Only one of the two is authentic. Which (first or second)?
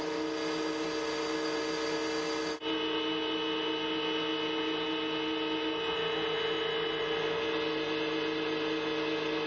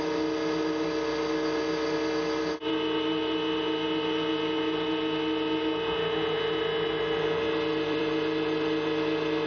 first